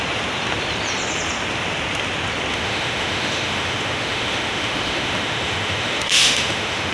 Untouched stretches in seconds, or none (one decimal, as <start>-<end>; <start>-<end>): 0.0-2.5